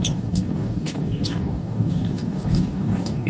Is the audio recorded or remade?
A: remade